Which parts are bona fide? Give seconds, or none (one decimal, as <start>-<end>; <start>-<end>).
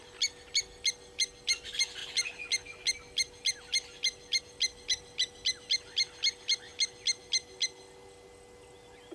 0.0-9.1